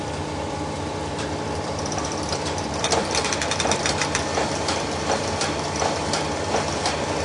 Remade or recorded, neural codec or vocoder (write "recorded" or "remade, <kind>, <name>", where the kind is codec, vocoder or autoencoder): remade, vocoder, BigVGAN v2